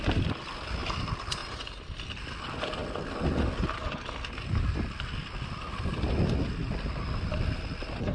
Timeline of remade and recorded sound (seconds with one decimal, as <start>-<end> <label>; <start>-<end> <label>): 0.0-8.1 recorded